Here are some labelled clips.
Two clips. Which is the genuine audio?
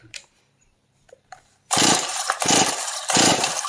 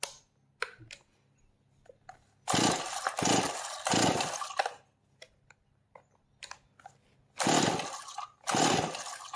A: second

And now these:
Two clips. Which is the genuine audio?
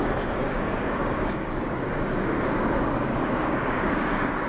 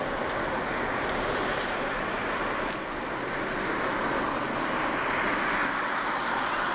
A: second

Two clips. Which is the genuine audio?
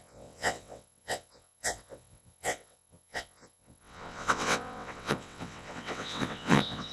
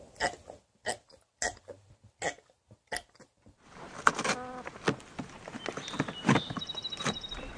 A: second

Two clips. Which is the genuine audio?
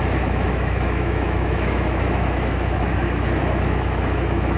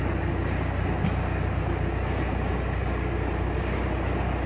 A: second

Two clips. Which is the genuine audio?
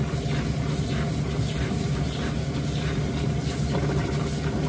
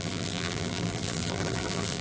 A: first